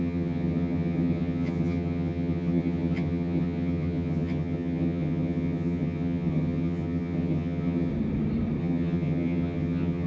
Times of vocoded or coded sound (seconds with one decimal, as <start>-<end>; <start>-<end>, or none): 0.0-7.9; 8.6-10.1